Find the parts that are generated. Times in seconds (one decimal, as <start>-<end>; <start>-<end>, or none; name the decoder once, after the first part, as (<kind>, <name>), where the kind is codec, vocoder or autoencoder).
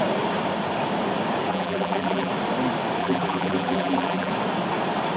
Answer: 1.5-2.3 (vocoder, BigVGAN v2); 3.0-4.3